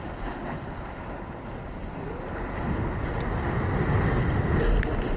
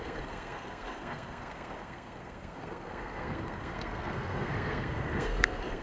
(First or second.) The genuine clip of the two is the first